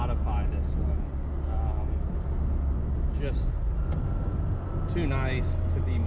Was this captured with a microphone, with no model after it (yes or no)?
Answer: yes